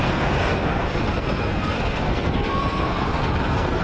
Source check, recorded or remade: remade